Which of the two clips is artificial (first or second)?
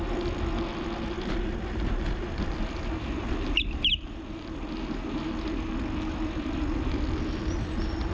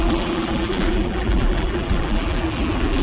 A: second